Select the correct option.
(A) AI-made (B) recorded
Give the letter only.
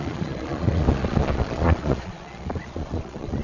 A